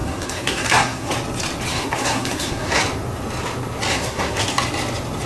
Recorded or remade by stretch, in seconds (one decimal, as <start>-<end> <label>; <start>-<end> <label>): 0.0-1.1 remade; 1.1-1.7 recorded; 1.7-2.8 remade; 2.8-3.9 recorded; 3.9-4.4 remade; 4.4-5.3 recorded